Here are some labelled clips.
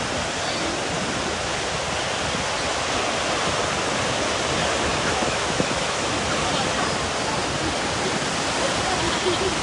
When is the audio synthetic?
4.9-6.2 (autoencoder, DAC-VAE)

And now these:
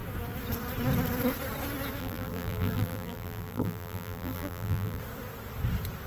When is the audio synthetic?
2.0-5.0 (vocoder, BigVGAN v2)

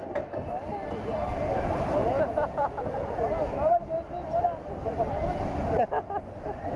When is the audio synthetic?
2.0-3.2 (vocoder, Vocos)

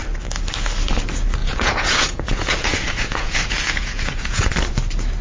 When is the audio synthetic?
1.4-4.5 (vocoder, Vocos)

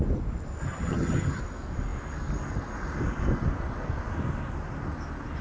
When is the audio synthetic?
0.6-1.4 (vocoder, HiFi-GAN)

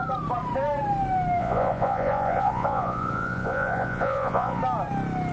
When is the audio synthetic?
1.4-4.6 (vocoder, Vocos)

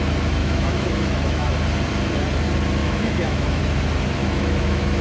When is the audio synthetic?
0.4-1.5 (autoencoder, DAC-VAE); 2.8-3.6; 4.2-5.0

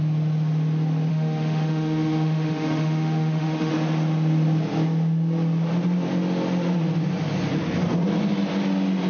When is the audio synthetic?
1.1-3.7 (autoencoder, DAC-VAE)